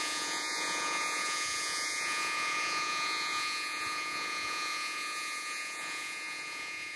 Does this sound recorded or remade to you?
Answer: remade